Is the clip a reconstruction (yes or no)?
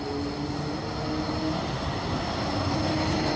no